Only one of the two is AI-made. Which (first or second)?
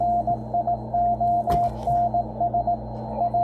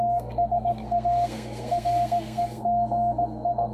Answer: second